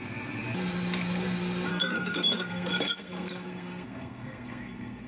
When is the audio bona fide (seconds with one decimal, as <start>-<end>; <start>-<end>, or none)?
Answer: 0.0-1.7